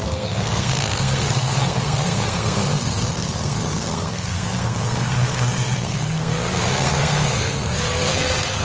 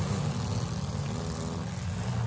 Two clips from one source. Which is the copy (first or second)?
first